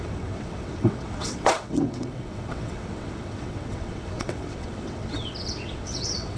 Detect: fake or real fake